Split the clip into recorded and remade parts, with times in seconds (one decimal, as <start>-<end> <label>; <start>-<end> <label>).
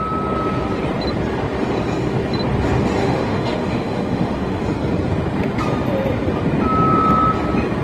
0.0-3.0 recorded; 3.0-4.6 remade; 4.6-7.8 recorded